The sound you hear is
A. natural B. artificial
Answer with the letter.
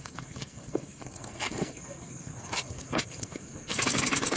B